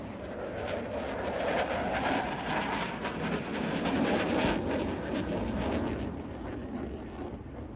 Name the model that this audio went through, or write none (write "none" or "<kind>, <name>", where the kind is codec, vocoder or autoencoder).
none